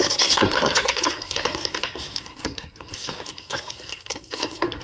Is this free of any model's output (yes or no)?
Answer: no